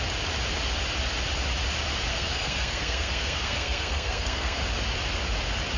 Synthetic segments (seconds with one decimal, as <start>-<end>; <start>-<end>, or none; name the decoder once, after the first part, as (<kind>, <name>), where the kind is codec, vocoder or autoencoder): 2.1-4.6 (codec, SNAC)